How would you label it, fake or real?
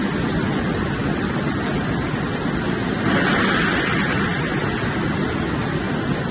real